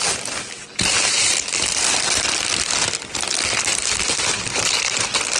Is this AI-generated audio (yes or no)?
no